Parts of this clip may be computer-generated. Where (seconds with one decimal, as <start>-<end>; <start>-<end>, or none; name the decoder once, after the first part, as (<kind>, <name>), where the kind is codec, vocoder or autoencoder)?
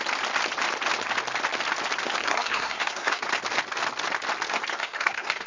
2.2-3.3 (codec, SNAC); 4.7-5.5